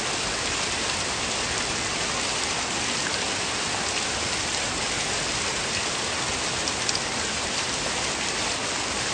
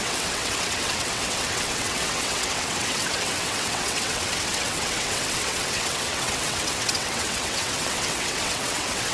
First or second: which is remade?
second